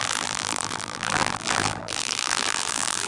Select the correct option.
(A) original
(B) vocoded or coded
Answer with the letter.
B